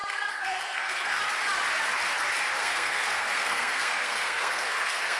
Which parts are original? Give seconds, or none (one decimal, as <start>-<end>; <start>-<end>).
1.2-2.6